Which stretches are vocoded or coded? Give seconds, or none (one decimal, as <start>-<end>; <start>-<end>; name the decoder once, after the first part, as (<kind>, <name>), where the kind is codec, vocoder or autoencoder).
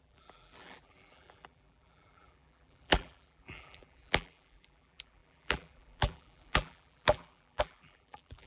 0.0-8.5 (vocoder, BigVGAN v2)